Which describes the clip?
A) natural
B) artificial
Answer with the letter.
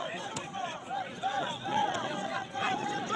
B